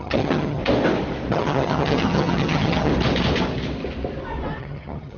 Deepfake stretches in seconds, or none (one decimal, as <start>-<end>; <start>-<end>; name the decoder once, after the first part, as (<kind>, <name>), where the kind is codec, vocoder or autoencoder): 0.0-0.6 (vocoder, HiFi-GAN); 1.3-2.9; 4.6-5.2